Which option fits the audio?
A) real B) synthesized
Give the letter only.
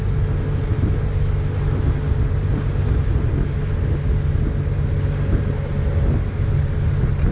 A